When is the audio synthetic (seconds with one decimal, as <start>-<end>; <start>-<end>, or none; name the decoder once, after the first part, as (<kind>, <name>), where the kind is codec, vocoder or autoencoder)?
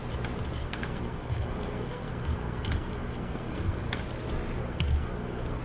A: 0.6-4.0 (codec, SNAC); 4.6-5.6